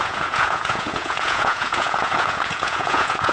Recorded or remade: remade